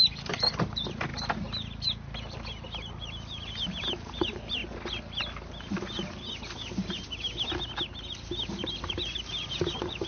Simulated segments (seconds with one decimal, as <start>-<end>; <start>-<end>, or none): 0.0-1.1; 2.9-4.6; 8.7-10.1